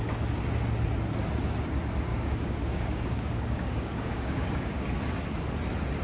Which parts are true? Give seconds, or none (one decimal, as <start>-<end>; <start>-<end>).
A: 0.0-2.1; 4.9-6.0